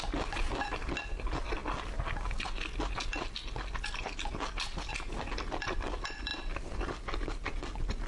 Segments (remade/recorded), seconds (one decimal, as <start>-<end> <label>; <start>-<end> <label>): 0.0-8.1 recorded